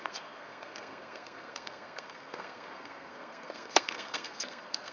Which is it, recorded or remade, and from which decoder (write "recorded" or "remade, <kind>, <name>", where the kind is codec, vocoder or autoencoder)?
remade, codec, SNAC